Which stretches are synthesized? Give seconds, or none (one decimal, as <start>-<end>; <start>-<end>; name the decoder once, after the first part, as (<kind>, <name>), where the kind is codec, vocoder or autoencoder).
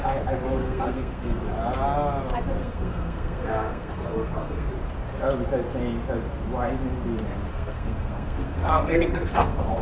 0.6-1.4 (codec, SNAC); 2.6-4.7; 7.5-9.8